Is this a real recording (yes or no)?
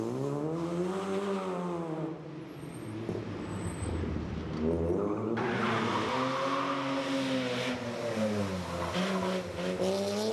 yes